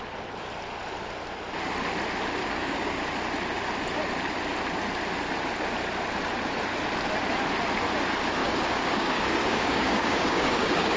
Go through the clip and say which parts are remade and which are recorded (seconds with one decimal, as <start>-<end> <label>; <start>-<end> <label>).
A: 0.0-2.4 recorded; 2.4-3.0 remade; 3.0-8.4 recorded; 8.4-11.0 remade